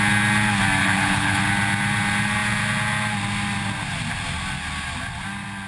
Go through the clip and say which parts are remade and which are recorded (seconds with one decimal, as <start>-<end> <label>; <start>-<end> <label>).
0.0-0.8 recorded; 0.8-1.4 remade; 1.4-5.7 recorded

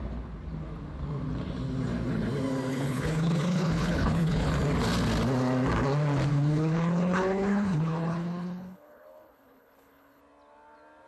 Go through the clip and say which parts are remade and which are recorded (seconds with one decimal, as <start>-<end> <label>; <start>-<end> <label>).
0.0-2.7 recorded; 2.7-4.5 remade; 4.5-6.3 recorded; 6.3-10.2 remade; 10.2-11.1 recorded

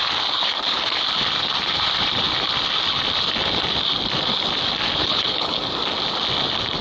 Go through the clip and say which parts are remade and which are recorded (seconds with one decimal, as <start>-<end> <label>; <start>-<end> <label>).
0.0-5.0 recorded; 5.0-5.6 remade; 5.6-6.8 recorded